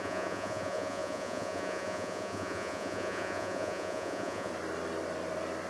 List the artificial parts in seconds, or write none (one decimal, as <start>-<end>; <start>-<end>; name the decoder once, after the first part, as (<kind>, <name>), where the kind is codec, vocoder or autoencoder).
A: 0.0-4.5 (vocoder, Vocos)